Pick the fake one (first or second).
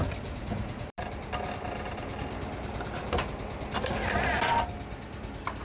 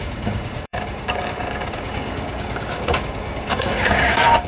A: second